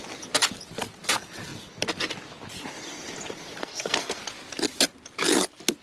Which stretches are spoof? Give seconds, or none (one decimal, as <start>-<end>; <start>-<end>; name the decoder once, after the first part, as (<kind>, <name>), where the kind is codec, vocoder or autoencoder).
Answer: 3.6-4.2 (codec, SNAC)